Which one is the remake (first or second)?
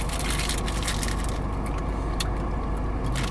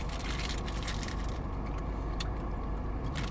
second